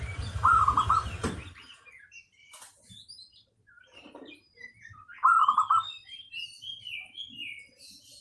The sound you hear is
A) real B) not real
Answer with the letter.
A